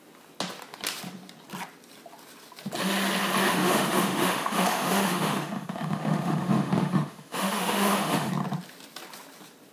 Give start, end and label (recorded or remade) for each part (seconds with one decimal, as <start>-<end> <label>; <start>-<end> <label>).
0.0-3.4 recorded; 3.4-8.3 remade; 8.3-9.7 recorded